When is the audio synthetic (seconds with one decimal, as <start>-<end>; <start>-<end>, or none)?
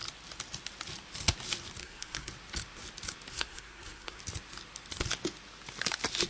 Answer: 1.8-2.3; 3.3-4.2